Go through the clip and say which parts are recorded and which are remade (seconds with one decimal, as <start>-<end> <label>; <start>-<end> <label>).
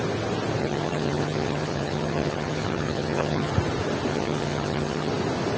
0.0-0.6 recorded; 0.6-3.5 remade; 3.5-4.1 recorded; 4.1-5.1 remade; 5.1-5.6 recorded